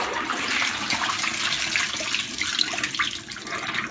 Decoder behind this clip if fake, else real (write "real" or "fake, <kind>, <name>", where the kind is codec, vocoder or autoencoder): real